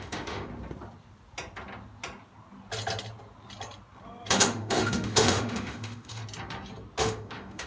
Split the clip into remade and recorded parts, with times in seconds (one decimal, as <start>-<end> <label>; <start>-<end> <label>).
0.0-0.5 remade; 0.5-4.3 recorded; 4.3-6.2 remade; 6.2-7.0 recorded; 7.0-7.7 remade